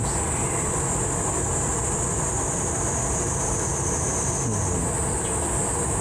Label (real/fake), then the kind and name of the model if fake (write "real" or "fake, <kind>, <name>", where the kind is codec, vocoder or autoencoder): real